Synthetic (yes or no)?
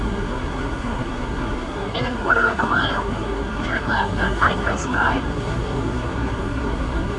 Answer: yes